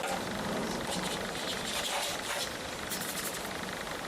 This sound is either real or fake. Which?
fake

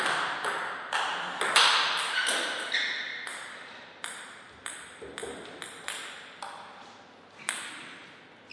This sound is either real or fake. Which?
real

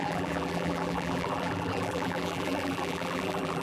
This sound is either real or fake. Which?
fake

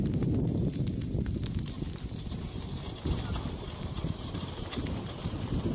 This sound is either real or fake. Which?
fake